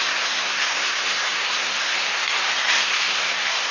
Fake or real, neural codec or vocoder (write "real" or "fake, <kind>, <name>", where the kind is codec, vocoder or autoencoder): fake, codec, SNAC